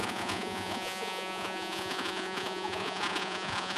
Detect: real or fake fake